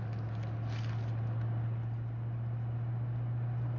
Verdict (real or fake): real